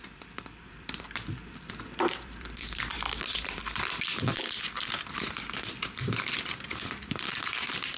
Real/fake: fake